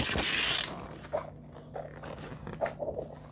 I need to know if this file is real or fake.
real